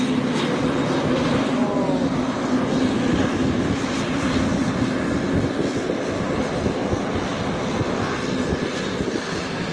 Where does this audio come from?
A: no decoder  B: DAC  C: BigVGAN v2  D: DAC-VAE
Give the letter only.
A